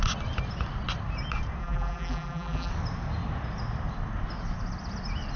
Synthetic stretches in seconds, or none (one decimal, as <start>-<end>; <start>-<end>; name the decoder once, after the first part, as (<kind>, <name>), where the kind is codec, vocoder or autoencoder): 1.6-2.7 (vocoder, BigVGAN v2)

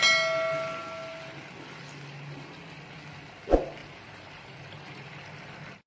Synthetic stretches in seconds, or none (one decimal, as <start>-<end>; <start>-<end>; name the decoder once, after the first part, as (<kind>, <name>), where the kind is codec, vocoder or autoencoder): 3.8-5.1 (vocoder, BigVGAN v2)

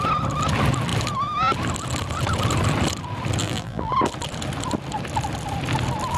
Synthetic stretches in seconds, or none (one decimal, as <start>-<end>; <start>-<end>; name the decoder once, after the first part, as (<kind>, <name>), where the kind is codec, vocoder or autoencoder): 3.4-3.9 (vocoder, BigVGAN v2)

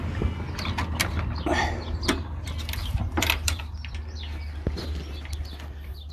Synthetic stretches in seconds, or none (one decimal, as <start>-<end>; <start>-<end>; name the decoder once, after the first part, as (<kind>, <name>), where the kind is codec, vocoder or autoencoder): 2.8-3.6 (vocoder, BigVGAN v2)

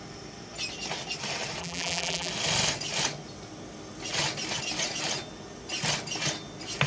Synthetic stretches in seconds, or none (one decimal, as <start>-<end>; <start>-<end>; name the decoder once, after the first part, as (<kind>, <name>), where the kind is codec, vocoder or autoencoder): 1.6-2.3 (vocoder, BigVGAN v2)

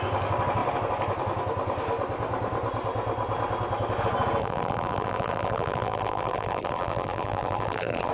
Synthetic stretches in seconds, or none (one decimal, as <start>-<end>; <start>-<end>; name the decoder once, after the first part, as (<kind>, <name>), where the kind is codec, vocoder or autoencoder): 4.4-8.1 (vocoder, BigVGAN v2)

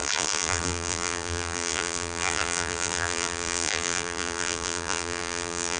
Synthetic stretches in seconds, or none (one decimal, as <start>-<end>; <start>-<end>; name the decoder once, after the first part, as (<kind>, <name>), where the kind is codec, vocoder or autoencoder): 0.0-5.8 (vocoder, BigVGAN v2)